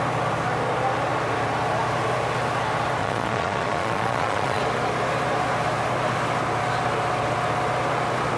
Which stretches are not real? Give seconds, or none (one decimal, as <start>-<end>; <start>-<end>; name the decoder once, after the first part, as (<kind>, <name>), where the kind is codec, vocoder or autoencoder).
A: 3.0-4.6 (vocoder, Vocos)